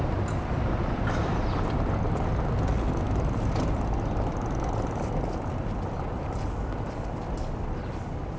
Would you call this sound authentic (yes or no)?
yes